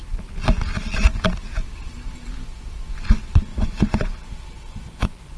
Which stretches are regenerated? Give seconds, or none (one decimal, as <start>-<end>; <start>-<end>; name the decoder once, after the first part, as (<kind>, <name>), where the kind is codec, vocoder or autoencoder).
3.5-5.4 (vocoder, Vocos)